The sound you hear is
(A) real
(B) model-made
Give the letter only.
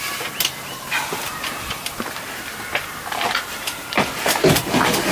A